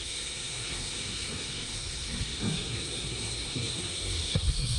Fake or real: fake